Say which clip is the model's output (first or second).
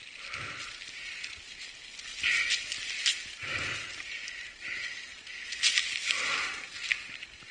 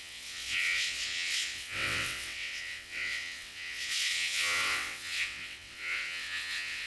second